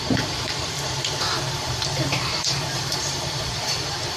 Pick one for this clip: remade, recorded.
remade